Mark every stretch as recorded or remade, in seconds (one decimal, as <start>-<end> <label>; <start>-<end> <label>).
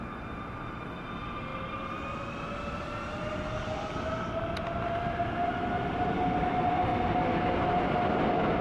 0.0-8.6 recorded